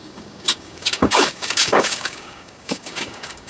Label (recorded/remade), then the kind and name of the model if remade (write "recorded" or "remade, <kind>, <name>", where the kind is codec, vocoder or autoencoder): remade, codec, DAC